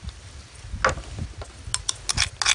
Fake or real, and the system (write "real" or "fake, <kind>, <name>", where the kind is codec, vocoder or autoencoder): real